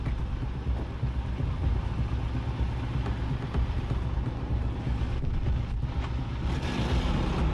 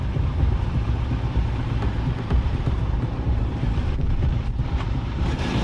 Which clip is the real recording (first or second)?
first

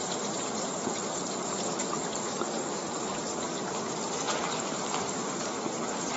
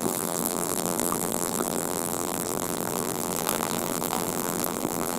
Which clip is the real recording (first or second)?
first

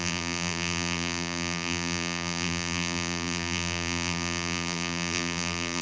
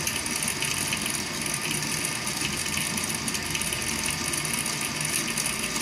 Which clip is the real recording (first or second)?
second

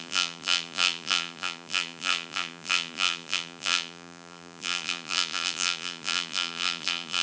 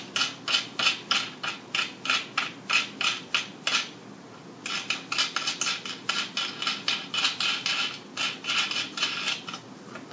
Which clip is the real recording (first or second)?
second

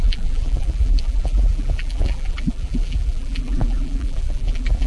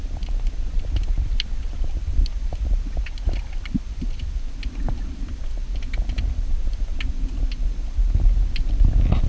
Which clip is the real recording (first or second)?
second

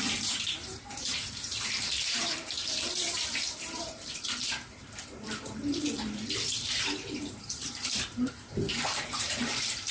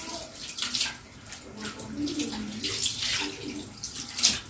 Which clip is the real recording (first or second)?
second